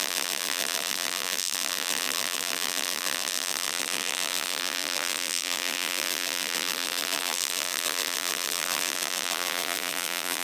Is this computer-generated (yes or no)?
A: yes